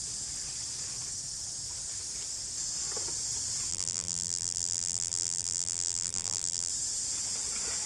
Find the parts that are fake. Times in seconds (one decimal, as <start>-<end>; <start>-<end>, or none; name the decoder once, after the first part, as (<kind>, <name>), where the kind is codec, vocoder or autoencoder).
3.7-6.7 (vocoder, BigVGAN v2)